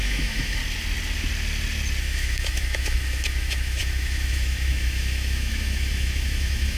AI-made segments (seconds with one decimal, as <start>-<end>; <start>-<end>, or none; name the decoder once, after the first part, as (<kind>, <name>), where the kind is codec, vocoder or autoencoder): 0.0-0.6 (autoencoder, DAC-VAE); 2.0-6.8